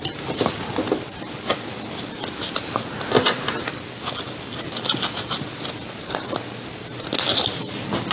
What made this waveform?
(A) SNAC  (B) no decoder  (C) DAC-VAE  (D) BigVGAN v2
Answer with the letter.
B